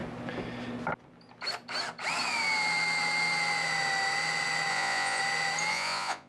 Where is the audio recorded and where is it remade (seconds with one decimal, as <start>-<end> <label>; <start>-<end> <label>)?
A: 0.0-4.7 recorded; 4.7-5.2 remade; 5.2-5.7 recorded; 5.7-6.3 remade